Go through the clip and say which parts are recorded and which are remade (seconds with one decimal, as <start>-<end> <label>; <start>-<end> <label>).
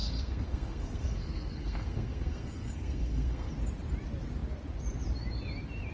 0.0-3.5 remade; 3.5-5.9 recorded